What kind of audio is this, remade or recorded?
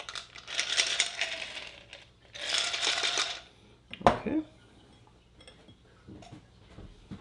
recorded